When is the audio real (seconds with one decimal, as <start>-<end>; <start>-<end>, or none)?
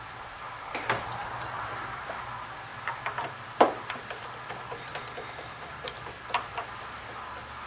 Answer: 0.0-4.9; 5.9-7.7